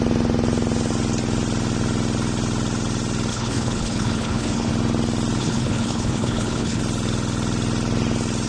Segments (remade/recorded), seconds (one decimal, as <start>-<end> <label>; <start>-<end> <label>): 0.0-3.3 recorded; 3.3-4.7 remade; 4.7-5.4 recorded; 5.4-6.8 remade; 6.8-8.5 recorded